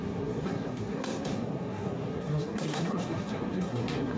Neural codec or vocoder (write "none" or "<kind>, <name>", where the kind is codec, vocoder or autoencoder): codec, SNAC